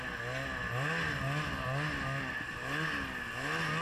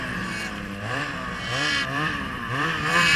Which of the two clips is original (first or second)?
first